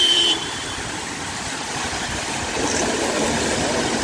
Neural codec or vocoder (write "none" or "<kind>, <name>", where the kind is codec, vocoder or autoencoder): vocoder, BigVGAN v2